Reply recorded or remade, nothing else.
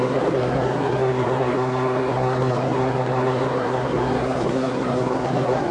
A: remade